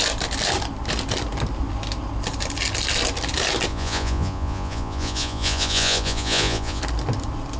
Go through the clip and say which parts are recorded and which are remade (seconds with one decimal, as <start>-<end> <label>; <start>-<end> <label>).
0.0-3.7 recorded; 3.7-6.8 remade; 6.8-7.6 recorded